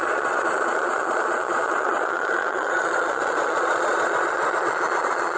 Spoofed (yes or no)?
yes